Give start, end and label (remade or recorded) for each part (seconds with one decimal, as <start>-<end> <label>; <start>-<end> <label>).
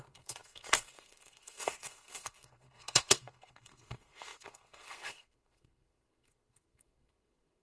0.0-7.6 remade